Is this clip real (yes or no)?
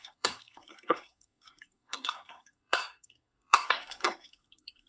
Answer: no